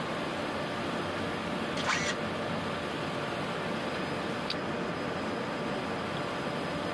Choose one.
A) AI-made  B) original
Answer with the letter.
B